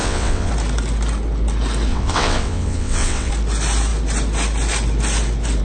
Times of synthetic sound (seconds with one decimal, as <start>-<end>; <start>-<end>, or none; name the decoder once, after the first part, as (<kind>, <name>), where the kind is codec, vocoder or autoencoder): 0.0-0.5 (vocoder, WaveNeXt); 1.9-3.3